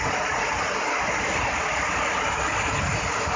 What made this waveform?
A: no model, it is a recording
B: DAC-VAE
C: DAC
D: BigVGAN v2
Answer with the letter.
A